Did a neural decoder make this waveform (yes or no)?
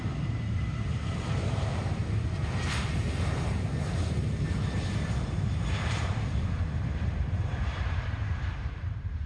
yes